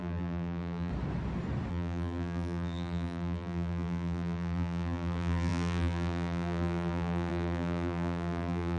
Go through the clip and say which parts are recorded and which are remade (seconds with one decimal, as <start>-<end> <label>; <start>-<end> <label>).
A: 0.0-0.9 remade; 0.9-1.7 recorded; 1.7-8.8 remade